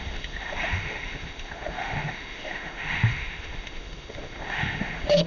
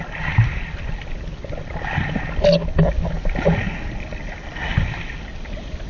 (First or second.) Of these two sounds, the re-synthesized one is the first